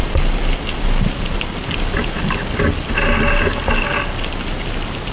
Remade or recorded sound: recorded